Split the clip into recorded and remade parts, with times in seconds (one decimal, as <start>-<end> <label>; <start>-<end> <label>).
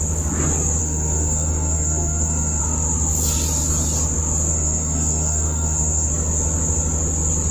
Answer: 0.0-0.8 recorded; 0.8-2.6 remade; 2.6-4.5 recorded; 4.5-6.1 remade; 6.1-7.5 recorded